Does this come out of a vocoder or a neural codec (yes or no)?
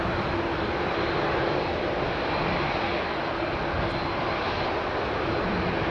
no